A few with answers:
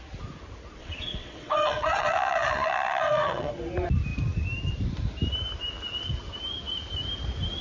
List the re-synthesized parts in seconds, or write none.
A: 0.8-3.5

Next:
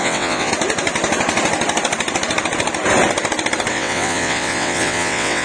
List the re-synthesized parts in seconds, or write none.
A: 0.0-0.5; 3.7-5.4

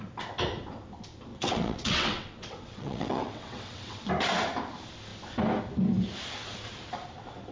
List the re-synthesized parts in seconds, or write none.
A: 1.3-4.1

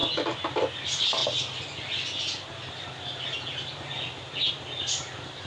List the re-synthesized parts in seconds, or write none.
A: none

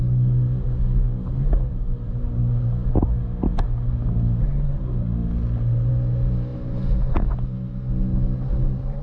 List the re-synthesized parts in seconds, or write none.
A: none

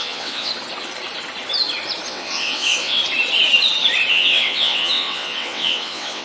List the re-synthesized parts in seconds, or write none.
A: 0.0-0.5; 2.1-3.0; 4.1-6.2